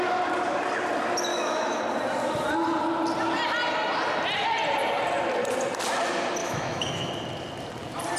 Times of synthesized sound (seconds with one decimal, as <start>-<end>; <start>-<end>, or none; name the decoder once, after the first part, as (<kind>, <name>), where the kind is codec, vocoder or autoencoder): 1.3-1.8 (autoencoder, DAC-VAE); 6.4-7.1